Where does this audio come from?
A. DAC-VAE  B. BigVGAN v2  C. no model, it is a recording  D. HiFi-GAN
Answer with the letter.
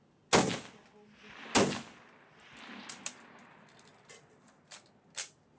C